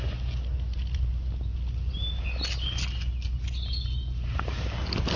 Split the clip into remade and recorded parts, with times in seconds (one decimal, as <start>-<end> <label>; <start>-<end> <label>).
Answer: 0.0-5.2 recorded